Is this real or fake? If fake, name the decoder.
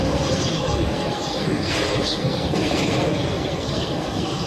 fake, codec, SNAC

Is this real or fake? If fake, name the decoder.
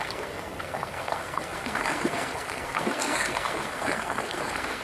fake, codec, SNAC